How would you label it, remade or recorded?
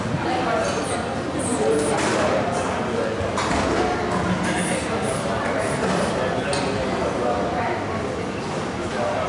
recorded